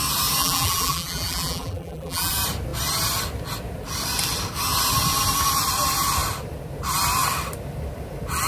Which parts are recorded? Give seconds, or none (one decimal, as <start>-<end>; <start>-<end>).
0.0-0.4; 2.3-8.5